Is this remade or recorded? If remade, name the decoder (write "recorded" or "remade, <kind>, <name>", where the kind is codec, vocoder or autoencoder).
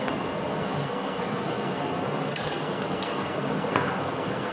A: remade, codec, SNAC